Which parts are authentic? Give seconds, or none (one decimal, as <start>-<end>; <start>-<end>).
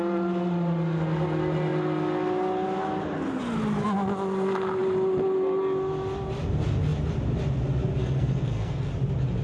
0.0-8.0; 8.9-9.4